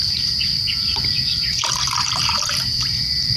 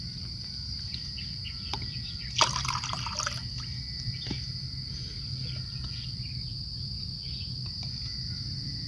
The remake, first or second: first